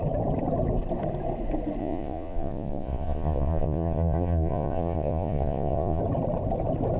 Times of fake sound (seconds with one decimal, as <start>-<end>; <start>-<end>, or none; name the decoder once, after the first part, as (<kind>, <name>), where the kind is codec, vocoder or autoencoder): 1.8-6.0 (vocoder, Vocos)